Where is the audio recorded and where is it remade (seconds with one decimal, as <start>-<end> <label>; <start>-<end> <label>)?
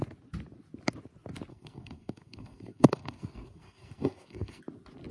0.0-1.5 recorded; 1.5-4.6 remade; 4.6-5.1 recorded